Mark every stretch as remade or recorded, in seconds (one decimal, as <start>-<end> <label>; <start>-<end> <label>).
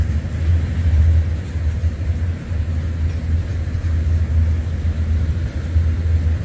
0.0-0.5 recorded; 0.5-1.0 remade; 1.0-1.8 recorded; 1.8-2.7 remade; 2.7-6.4 recorded